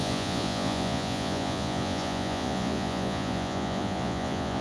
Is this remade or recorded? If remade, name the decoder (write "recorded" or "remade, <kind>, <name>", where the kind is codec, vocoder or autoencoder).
remade, vocoder, Vocos